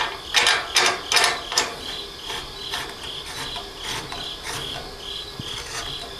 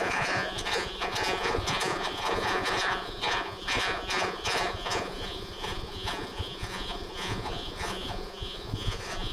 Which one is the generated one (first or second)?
second